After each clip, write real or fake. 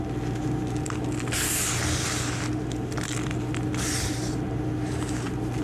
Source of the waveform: real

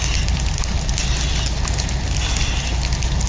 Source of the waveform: real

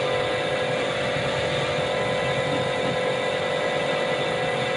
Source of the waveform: real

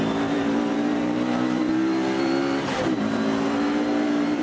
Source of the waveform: fake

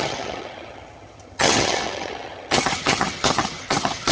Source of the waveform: fake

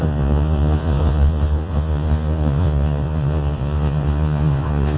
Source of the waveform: fake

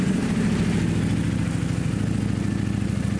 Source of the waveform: real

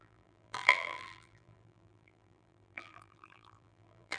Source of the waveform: fake